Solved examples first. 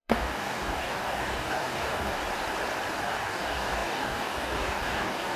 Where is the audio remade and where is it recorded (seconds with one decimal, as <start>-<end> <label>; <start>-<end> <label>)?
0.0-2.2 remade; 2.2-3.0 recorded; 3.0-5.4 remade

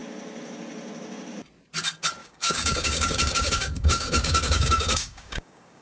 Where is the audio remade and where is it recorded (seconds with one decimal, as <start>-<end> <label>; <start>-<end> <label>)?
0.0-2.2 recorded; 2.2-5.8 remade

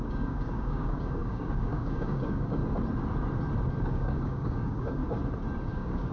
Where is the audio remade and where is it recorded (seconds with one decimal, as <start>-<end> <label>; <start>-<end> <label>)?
0.0-2.6 remade; 2.6-3.8 recorded; 3.8-5.0 remade; 5.0-5.6 recorded; 5.6-6.1 remade